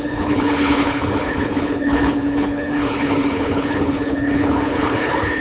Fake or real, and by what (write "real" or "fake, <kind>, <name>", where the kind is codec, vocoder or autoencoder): fake, codec, HILCodec